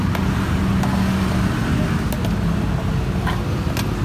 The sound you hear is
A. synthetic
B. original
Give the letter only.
B